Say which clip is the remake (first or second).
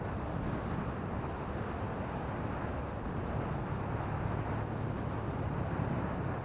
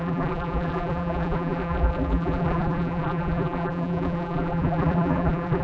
second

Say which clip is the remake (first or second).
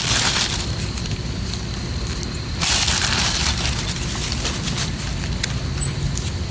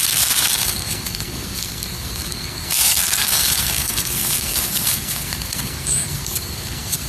second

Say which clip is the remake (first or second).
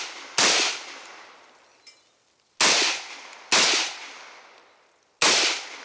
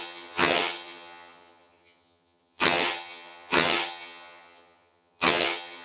second